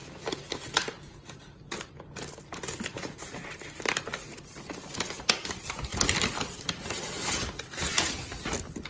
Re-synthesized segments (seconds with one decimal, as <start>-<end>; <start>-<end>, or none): none